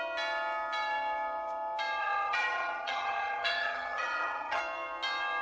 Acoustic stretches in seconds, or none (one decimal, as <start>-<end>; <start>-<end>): 0.0-2.0; 4.6-5.4